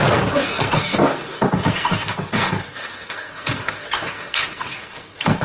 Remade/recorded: remade